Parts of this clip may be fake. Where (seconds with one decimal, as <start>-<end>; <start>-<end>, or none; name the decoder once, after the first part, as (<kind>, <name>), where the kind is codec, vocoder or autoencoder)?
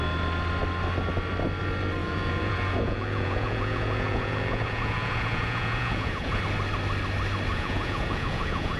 2.0-6.4 (vocoder, Vocos); 7.5-8.8